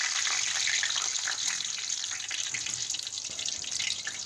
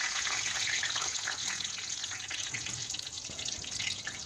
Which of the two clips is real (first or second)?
first